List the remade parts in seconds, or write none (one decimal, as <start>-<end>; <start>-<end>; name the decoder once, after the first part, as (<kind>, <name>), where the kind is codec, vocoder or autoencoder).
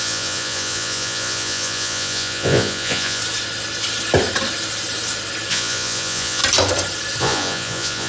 0.0-3.2 (vocoder, Vocos); 5.5-6.4; 7.2-8.1